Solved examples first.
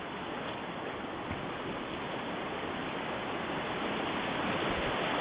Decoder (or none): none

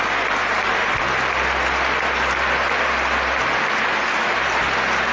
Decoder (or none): none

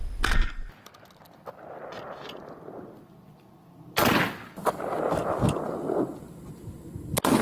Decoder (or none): none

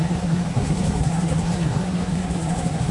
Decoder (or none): codec, SNAC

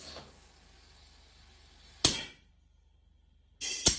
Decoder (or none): none